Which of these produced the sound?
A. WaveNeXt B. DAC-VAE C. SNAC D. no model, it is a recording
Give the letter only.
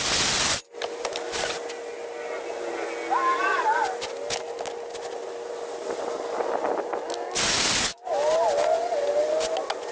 D